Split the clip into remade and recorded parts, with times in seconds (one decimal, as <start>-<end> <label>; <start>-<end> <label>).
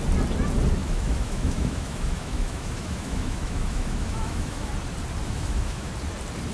0.0-0.8 recorded; 0.8-4.7 remade; 4.7-5.2 recorded; 5.2-5.9 remade; 5.9-6.5 recorded